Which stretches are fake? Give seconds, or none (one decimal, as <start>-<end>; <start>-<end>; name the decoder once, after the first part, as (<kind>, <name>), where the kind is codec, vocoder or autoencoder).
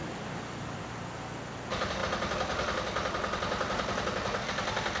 none